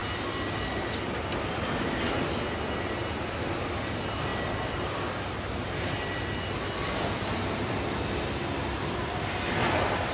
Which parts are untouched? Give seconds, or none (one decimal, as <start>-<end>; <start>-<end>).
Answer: 0.0-10.1